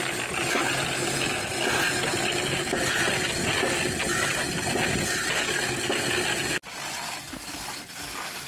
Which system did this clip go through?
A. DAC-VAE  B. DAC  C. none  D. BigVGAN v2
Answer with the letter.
C